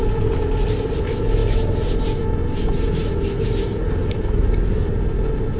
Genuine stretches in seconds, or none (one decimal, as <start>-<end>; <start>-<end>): 0.0-5.6

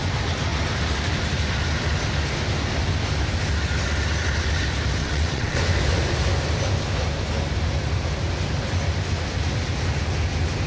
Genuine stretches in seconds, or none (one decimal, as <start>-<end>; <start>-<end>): 0.0-5.0; 5.6-10.7

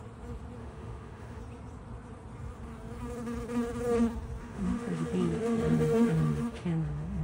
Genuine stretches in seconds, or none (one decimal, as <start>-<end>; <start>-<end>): 0.0-0.6; 1.4-4.4

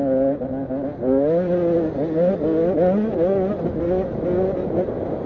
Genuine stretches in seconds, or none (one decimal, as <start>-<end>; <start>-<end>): 0.0-5.3

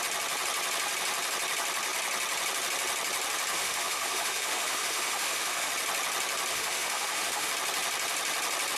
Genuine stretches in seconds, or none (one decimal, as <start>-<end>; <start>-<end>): 0.0-3.5; 5.7-6.5; 7.5-8.8

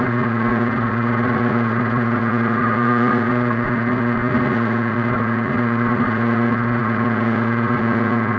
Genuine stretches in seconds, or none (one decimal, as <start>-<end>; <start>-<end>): none

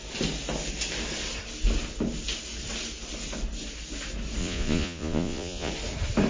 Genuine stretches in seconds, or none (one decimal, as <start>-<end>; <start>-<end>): 0.0-4.4; 5.7-6.3

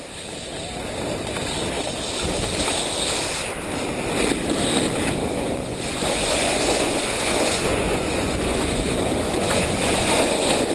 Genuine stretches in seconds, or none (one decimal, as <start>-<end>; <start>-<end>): 0.0-5.2